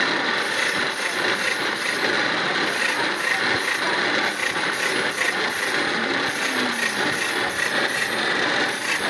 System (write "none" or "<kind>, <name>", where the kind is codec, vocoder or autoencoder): none